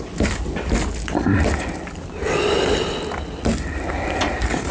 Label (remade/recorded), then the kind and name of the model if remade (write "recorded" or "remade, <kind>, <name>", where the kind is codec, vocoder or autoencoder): recorded